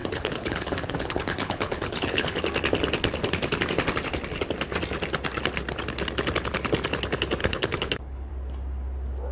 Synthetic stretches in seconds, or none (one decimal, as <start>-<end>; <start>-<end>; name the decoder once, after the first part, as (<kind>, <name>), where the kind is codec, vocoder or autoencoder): 0.0-2.4 (codec, HILCodec); 7.4-8.3